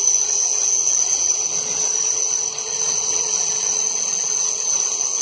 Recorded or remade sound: remade